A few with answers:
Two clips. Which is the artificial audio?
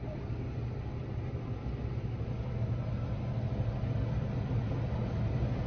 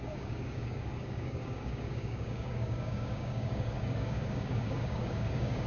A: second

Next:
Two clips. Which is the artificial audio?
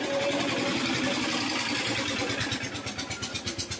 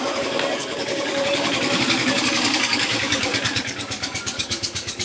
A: second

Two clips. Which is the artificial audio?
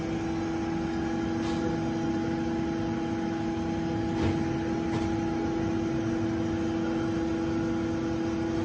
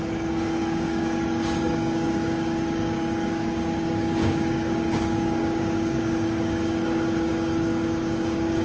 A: second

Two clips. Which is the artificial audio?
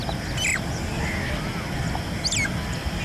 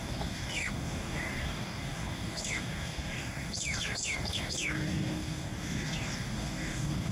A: second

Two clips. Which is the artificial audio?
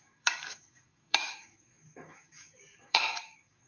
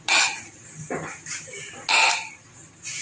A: first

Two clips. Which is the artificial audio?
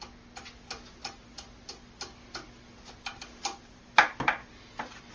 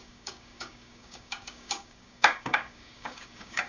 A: second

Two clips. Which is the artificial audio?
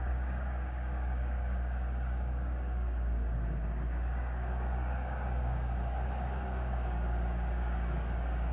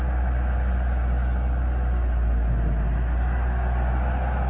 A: first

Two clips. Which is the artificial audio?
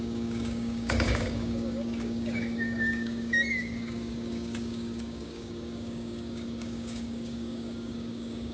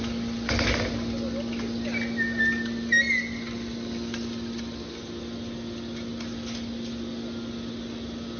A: first